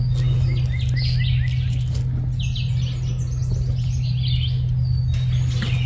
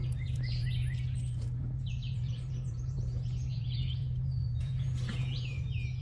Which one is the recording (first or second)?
first